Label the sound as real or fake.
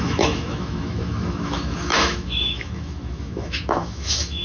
fake